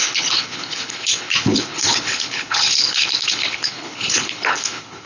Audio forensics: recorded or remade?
remade